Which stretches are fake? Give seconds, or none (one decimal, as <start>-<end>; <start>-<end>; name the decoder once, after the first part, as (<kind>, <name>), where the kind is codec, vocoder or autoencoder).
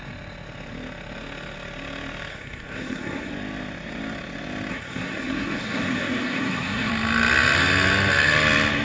2.3-3.3 (codec, SNAC); 4.7-6.9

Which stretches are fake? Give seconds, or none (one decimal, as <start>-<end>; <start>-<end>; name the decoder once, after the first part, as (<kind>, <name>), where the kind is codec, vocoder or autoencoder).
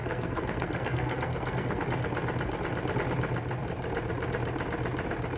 0.0-1.8 (codec, SNAC)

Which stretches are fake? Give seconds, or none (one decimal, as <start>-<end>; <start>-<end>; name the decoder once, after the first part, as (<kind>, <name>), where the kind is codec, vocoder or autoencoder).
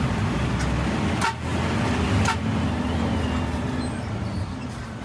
none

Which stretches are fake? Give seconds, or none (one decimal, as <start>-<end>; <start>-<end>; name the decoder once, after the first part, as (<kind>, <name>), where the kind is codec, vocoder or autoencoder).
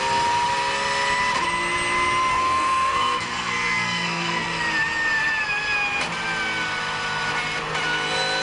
2.3-4.6 (codec, SNAC)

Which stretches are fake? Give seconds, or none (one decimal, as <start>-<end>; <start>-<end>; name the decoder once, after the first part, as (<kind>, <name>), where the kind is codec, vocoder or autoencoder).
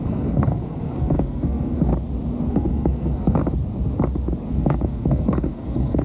0.0-1.9 (codec, SNAC); 2.5-3.4; 4.5-6.0